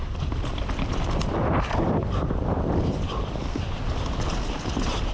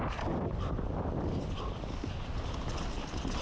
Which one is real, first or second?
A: second